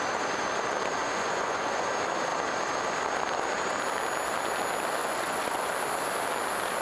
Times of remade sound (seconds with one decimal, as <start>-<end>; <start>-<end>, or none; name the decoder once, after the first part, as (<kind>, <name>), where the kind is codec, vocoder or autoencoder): 1.0-1.9 (vocoder, Vocos); 5.0-5.7